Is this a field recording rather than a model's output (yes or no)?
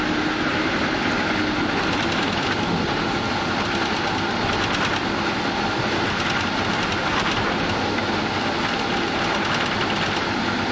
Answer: yes